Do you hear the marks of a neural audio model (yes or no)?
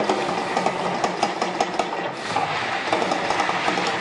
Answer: no